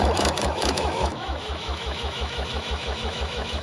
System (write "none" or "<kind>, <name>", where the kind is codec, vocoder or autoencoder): autoencoder, DAC-VAE